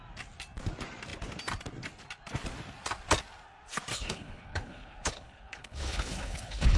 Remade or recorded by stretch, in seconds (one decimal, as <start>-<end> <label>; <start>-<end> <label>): 0.0-3.9 recorded; 3.9-6.8 remade